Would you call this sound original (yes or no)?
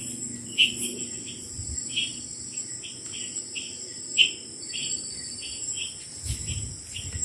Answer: yes